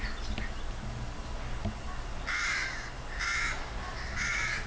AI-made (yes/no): no